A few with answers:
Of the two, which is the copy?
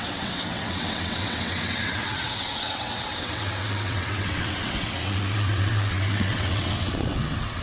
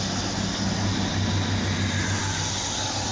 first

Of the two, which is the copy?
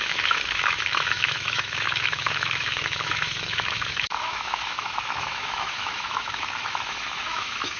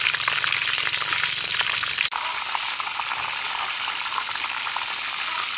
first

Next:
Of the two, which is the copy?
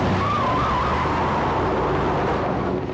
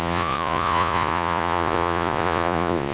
second